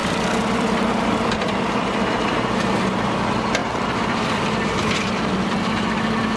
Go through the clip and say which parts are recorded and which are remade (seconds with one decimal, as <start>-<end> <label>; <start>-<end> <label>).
0.0-2.4 remade; 2.4-3.6 recorded; 3.6-4.4 remade; 4.4-6.4 recorded